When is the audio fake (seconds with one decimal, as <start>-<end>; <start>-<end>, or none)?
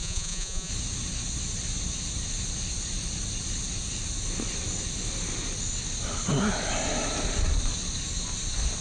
0.0-0.7